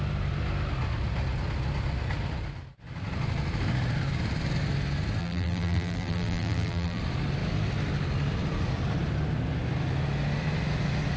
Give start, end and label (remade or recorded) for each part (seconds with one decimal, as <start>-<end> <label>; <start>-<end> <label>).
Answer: 0.0-5.2 recorded; 5.2-7.0 remade; 7.0-11.2 recorded